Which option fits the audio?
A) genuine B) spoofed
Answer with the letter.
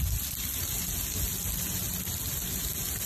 A